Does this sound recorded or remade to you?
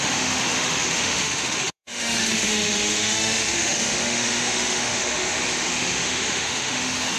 remade